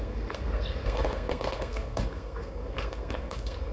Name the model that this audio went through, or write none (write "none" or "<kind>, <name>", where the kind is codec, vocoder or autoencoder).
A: codec, SNAC